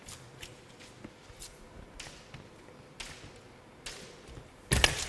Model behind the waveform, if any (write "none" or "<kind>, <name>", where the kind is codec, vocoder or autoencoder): none